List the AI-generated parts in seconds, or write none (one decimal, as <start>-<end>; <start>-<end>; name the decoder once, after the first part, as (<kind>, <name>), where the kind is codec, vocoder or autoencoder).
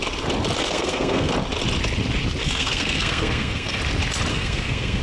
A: 0.6-1.3 (codec, SNAC); 2.4-3.8; 4.3-5.0